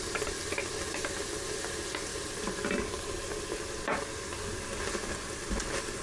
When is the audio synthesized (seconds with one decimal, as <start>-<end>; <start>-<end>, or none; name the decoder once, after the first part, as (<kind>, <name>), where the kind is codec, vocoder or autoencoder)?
none